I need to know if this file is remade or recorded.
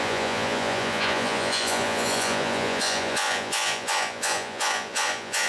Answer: remade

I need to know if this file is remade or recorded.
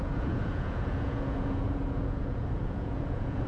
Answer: remade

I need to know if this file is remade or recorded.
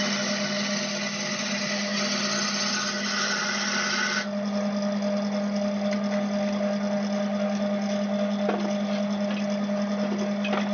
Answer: recorded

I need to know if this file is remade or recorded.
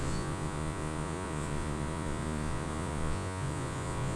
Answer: remade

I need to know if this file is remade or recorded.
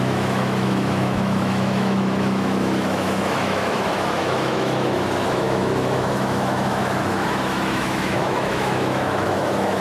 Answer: remade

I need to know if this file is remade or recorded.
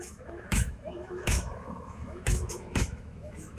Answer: remade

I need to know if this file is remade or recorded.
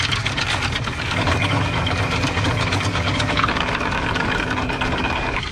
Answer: remade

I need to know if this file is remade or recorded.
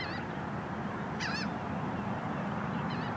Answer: recorded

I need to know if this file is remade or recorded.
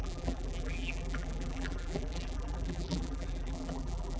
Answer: remade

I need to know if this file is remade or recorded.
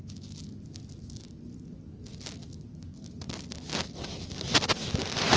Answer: recorded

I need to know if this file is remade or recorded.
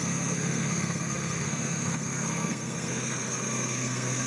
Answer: remade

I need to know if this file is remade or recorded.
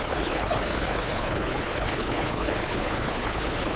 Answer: remade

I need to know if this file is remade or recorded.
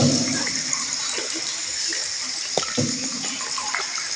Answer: recorded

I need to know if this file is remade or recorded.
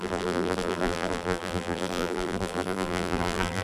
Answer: remade